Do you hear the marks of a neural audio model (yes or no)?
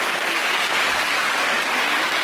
yes